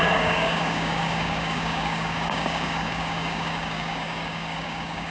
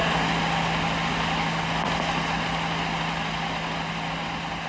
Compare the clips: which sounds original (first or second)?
second